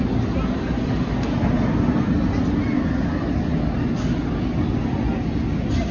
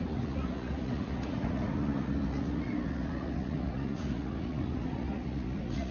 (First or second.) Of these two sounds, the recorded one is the first